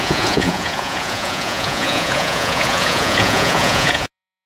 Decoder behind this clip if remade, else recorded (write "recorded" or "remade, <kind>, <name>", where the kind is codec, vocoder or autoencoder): remade, vocoder, Vocos